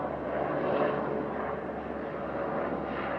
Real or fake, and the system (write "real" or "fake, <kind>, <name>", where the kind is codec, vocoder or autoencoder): real